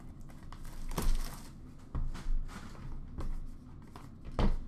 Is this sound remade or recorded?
recorded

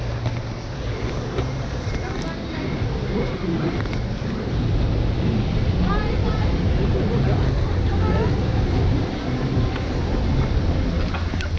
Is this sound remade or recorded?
recorded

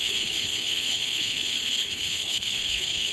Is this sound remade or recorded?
remade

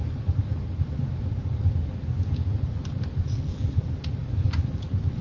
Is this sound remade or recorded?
recorded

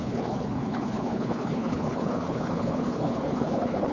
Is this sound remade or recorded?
remade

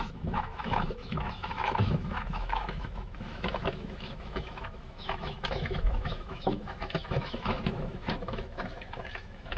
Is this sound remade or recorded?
remade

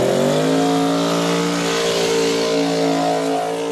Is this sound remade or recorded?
recorded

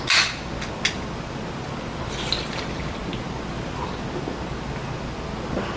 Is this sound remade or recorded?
recorded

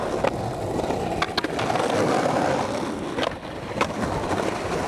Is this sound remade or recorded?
recorded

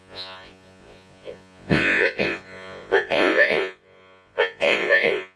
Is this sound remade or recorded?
remade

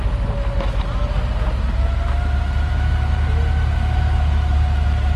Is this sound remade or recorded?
recorded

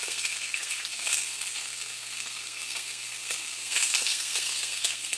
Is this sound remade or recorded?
remade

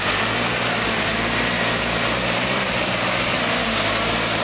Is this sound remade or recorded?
recorded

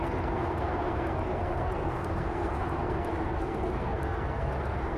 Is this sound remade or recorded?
remade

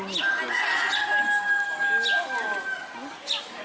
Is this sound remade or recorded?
recorded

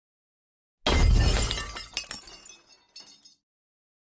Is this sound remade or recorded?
recorded